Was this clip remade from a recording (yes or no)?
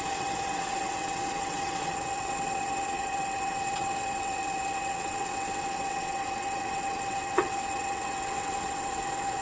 yes